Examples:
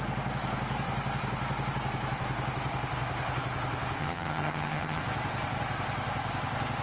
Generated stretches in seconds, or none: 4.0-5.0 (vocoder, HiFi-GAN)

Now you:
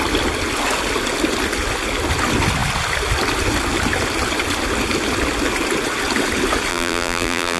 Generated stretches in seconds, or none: 6.7-7.6 (vocoder, BigVGAN v2)

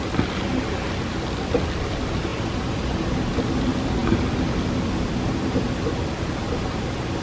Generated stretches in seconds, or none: 2.3-3.1 (vocoder, BigVGAN v2)